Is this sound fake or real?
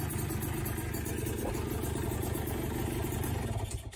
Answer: real